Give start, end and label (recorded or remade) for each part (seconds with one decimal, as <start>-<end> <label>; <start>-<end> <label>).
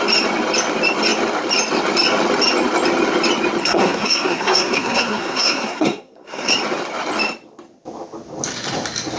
0.0-3.6 recorded; 3.6-6.5 remade; 6.5-9.2 recorded